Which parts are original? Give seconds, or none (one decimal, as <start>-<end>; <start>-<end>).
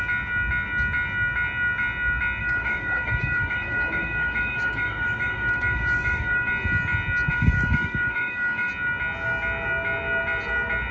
0.0-2.4; 6.5-7.3; 8.7-10.9